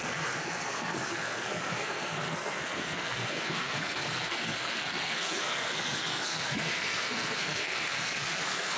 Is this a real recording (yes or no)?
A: no